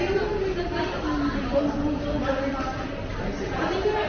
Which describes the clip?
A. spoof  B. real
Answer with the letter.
B